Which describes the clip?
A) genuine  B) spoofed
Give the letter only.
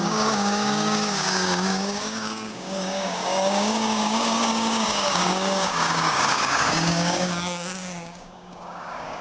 B